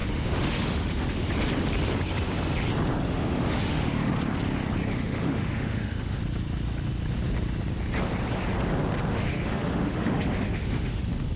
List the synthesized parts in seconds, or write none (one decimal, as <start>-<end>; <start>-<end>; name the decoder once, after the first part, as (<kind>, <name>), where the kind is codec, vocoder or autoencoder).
0.0-1.3 (autoencoder, DAC-VAE); 3.0-4.1; 4.9-6.2; 9.1-11.0